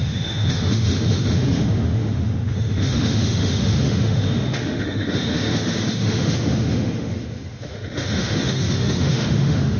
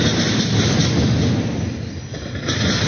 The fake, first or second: first